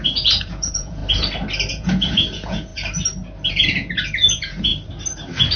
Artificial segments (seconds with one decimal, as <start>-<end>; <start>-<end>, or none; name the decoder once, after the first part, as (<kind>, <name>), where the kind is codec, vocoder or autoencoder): 0.0-1.0 (vocoder, Vocos); 1.7-2.7; 3.5-4.7